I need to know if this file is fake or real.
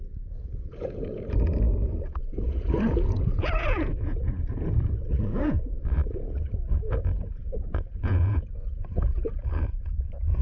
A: fake